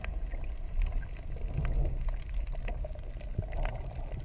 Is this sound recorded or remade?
recorded